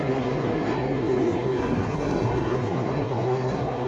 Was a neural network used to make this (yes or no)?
yes